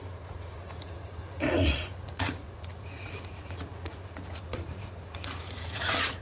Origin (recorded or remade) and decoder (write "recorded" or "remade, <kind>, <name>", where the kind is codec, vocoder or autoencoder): remade, vocoder, Vocos